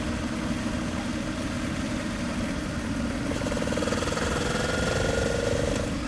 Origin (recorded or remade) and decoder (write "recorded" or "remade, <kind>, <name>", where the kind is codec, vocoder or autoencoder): recorded